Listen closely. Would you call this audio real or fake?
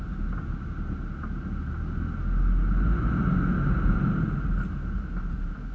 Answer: real